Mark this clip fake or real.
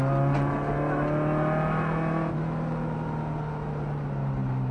real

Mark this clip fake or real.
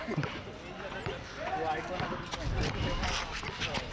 real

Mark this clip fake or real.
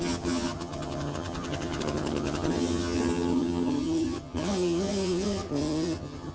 fake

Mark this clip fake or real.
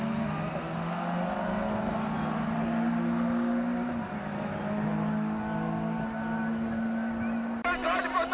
real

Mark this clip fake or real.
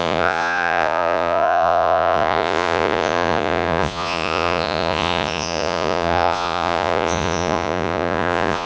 fake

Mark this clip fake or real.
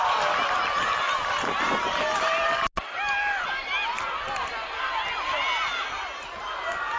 real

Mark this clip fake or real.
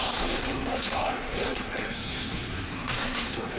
fake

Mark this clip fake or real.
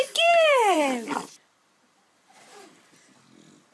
fake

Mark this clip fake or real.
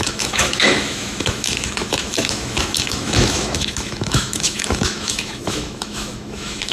fake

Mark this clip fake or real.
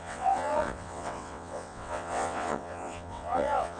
fake